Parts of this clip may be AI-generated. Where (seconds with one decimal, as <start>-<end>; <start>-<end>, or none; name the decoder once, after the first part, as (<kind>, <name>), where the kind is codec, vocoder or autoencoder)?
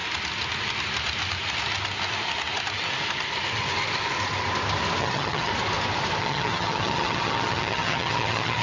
5.0-5.5 (vocoder, HiFi-GAN); 6.2-8.6